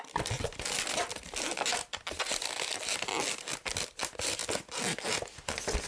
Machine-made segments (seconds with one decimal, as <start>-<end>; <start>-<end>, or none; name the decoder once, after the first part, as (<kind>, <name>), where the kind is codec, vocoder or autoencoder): none